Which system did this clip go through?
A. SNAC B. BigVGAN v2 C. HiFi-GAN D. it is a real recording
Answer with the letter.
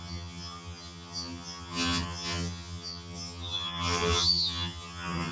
C